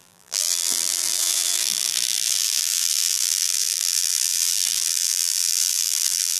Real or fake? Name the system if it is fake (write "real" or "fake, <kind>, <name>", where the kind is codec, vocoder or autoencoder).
fake, vocoder, BigVGAN v2